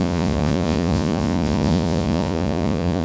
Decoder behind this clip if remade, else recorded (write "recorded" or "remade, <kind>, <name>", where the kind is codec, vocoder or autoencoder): remade, vocoder, Vocos